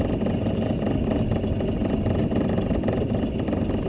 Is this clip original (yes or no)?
yes